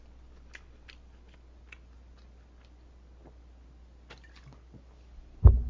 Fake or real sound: real